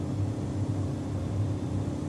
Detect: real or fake real